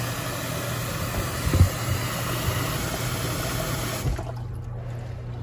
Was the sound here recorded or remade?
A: recorded